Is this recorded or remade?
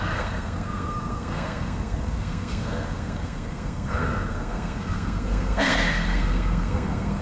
remade